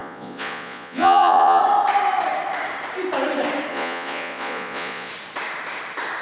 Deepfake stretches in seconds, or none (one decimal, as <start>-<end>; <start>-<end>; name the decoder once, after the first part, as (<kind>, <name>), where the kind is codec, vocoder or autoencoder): 0.0-1.6 (vocoder, Vocos); 3.7-5.1